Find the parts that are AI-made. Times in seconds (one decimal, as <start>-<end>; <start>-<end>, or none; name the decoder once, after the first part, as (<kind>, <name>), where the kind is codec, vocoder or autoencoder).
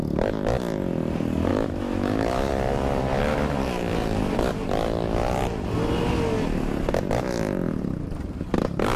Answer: 1.5-2.5 (autoencoder, DAC-VAE)